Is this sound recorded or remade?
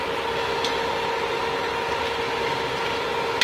recorded